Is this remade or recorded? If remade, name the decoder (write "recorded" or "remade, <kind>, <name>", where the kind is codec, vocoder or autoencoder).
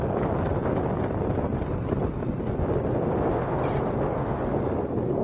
recorded